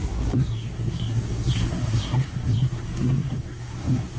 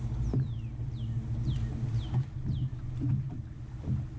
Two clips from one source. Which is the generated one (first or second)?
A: first